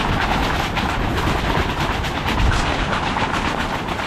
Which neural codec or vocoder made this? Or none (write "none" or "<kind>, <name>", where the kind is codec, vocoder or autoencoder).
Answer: none